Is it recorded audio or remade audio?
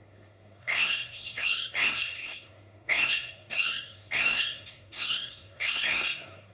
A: remade